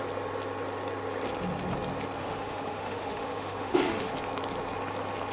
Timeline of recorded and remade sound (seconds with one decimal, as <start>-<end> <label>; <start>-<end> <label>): 0.0-2.2 recorded; 2.2-4.1 remade; 4.1-5.3 recorded